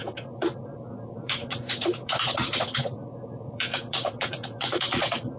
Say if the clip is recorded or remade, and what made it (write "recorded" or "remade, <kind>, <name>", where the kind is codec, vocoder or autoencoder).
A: remade, vocoder, Vocos